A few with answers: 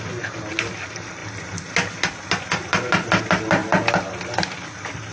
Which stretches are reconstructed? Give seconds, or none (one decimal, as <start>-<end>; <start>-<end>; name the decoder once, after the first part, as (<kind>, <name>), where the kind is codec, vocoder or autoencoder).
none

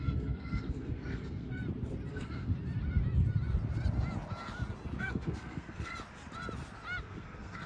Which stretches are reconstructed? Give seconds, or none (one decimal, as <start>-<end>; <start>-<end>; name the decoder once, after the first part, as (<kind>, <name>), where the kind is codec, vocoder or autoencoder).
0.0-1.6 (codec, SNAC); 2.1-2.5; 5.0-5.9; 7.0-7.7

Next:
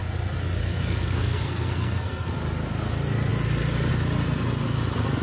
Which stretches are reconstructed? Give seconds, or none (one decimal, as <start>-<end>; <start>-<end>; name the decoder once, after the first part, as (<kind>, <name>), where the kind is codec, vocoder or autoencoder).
0.6-2.3 (codec, SNAC)

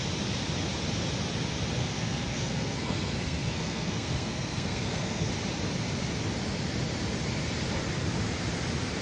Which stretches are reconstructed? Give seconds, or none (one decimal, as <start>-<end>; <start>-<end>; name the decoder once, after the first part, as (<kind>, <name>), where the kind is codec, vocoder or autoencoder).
1.8-5.3 (codec, SNAC)

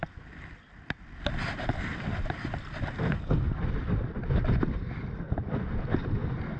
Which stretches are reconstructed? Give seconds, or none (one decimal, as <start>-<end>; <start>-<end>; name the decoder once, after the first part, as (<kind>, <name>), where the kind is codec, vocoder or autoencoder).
none

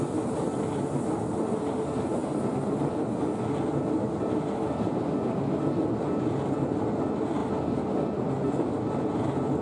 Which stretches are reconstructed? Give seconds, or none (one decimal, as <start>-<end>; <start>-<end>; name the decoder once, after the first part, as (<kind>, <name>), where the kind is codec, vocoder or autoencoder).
none

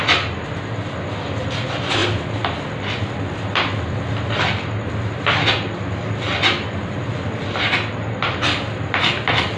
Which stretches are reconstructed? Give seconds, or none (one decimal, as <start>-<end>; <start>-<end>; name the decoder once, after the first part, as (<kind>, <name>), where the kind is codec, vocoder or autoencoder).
none